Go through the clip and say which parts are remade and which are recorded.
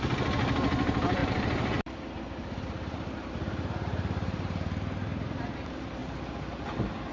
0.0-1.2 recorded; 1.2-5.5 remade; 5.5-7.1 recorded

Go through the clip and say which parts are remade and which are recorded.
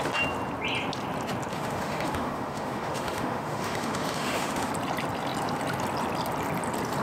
0.0-1.5 recorded; 1.5-4.7 remade; 4.7-7.0 recorded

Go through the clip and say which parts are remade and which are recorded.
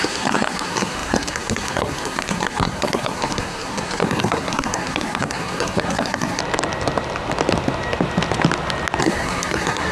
0.0-6.4 remade; 6.4-9.0 recorded; 9.0-9.9 remade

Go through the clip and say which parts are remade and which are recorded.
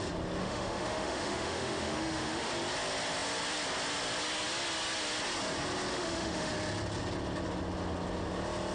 0.0-0.4 recorded; 0.4-2.5 remade; 2.5-5.9 recorded; 5.9-6.5 remade; 6.5-8.7 recorded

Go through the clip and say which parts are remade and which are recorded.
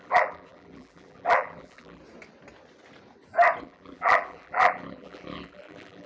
0.0-2.0 remade; 2.0-3.6 recorded; 3.6-6.1 remade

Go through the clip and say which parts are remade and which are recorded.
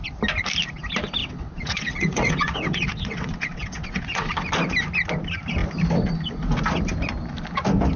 0.0-1.2 recorded; 1.2-4.3 remade; 4.3-8.0 recorded